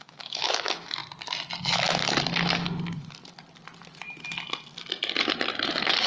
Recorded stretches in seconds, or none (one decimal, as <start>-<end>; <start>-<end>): 1.0-1.6; 2.0-6.1